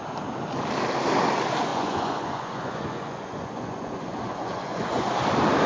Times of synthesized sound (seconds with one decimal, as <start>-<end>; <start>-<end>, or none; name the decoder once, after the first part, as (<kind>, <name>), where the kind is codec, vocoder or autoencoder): 1.7-5.1 (vocoder, Vocos)